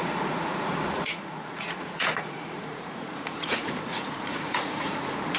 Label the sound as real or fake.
fake